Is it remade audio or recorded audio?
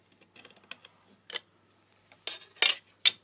recorded